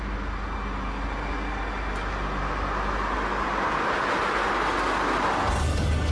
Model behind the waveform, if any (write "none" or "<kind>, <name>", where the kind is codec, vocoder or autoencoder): none